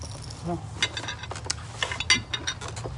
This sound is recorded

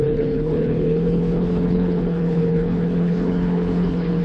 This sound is remade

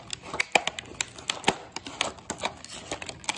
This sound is recorded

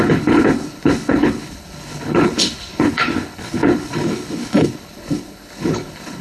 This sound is remade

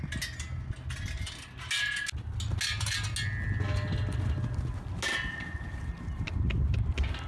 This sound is recorded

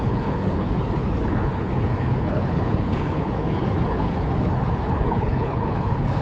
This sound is remade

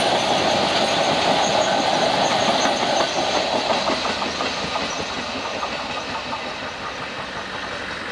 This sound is recorded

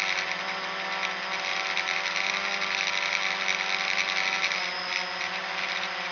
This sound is recorded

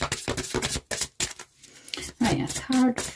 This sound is recorded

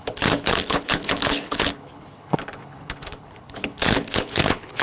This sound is remade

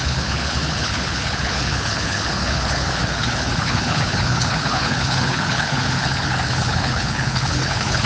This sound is remade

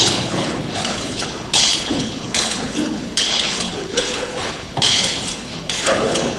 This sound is remade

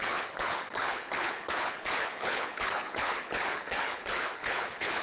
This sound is remade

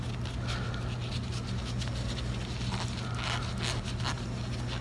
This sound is recorded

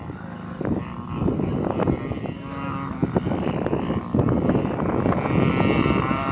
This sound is recorded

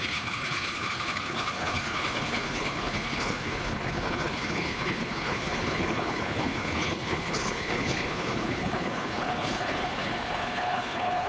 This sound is remade